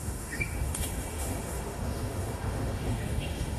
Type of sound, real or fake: fake